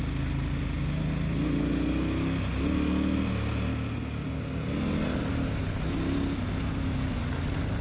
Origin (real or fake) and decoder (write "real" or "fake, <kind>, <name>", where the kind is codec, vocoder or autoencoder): real